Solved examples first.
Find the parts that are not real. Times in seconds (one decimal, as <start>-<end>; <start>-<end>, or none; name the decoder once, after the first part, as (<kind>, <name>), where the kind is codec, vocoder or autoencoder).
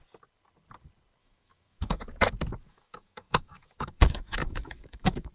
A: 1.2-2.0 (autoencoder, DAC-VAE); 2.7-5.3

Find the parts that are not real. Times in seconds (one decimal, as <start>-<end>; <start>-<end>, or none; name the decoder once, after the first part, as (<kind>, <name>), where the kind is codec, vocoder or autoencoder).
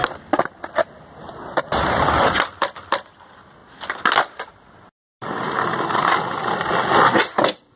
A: none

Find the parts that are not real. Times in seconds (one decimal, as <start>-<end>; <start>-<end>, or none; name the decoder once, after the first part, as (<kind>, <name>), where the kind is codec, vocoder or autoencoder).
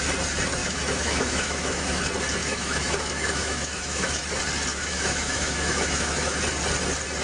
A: 0.6-2.0 (autoencoder, DAC-VAE); 2.4-4.2; 4.7-6.4